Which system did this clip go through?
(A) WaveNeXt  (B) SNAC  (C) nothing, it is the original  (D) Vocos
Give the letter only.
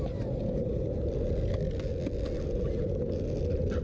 C